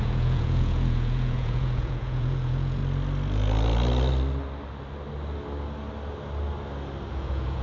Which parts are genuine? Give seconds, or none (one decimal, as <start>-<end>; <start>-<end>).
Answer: 2.8-7.1